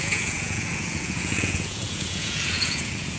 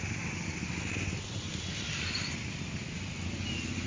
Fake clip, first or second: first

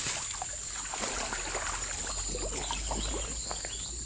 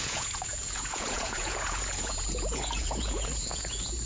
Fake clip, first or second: second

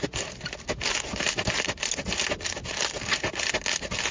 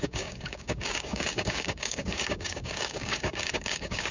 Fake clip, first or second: second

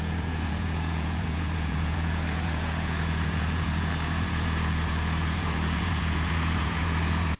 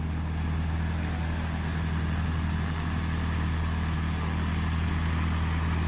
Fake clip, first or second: first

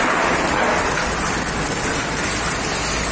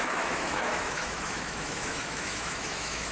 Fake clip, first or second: second